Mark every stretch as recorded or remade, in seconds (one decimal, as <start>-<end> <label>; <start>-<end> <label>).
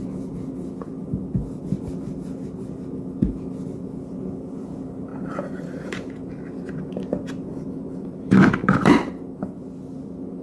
0.0-5.1 recorded; 5.1-6.1 remade; 6.1-7.5 recorded; 7.5-9.1 remade; 9.1-10.4 recorded